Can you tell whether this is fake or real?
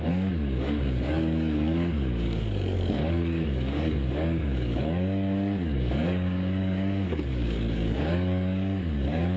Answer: fake